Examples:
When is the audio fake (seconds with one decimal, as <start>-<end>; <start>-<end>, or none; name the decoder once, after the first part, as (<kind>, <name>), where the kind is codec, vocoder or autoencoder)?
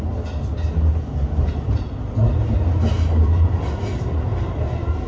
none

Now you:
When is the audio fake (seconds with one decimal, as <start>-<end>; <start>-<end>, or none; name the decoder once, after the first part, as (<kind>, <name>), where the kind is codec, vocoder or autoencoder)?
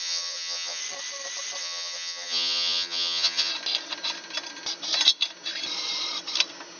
0.0-0.8 (vocoder, HiFi-GAN); 1.6-3.5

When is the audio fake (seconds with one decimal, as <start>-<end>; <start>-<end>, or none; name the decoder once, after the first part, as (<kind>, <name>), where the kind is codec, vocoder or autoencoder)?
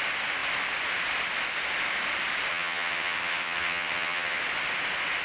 2.5-4.4 (vocoder, HiFi-GAN)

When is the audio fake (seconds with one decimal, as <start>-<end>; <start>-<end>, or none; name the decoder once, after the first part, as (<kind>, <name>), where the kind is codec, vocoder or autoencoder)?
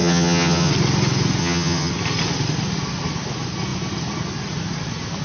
0.0-0.7 (vocoder, HiFi-GAN); 1.4-1.9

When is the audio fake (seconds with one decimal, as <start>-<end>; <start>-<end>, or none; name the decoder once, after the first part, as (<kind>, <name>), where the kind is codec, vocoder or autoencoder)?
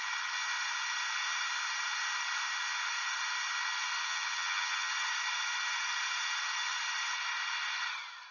4.0-4.9 (vocoder, HiFi-GAN)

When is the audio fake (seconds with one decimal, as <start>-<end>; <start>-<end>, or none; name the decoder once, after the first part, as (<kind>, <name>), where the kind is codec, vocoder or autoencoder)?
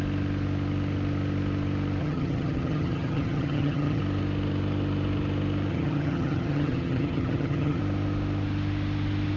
2.0-4.0 (vocoder, HiFi-GAN); 5.7-7.8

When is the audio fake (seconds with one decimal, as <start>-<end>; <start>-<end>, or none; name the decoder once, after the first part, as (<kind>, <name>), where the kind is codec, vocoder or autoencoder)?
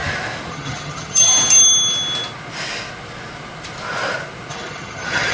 0.5-1.3 (vocoder, HiFi-GAN); 4.5-5.3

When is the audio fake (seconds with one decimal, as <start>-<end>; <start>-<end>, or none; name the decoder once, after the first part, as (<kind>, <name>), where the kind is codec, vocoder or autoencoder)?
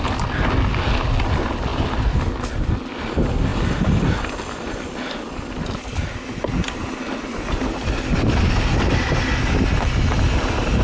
none